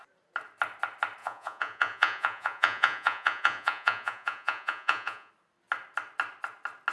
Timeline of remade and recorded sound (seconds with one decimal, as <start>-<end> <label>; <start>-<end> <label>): 0.0-1.2 recorded; 1.2-5.3 remade; 5.3-6.9 recorded